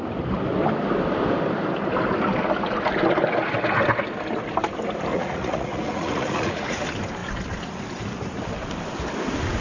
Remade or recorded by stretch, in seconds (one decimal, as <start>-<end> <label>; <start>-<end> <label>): 0.0-5.1 recorded; 5.1-6.8 remade; 6.8-9.6 recorded